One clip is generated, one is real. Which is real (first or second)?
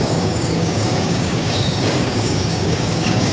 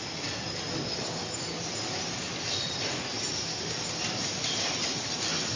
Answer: second